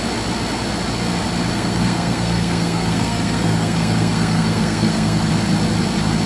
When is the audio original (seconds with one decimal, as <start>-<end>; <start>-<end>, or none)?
0.0-1.5; 5.3-6.3